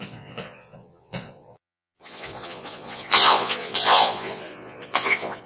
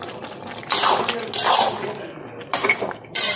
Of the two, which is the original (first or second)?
second